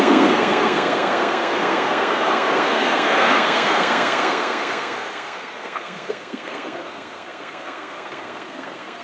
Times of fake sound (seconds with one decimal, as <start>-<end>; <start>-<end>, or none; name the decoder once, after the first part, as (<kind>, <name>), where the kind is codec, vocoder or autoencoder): 0.0-9.0 (codec, SNAC)